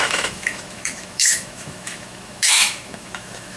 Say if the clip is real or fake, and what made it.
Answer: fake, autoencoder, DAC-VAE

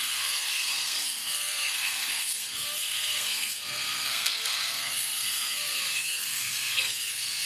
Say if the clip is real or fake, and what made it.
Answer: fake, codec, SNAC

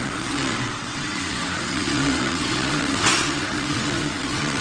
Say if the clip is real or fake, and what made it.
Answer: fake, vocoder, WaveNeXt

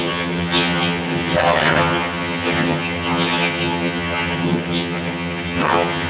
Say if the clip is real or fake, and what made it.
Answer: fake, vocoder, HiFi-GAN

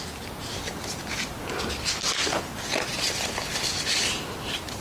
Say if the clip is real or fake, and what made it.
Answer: real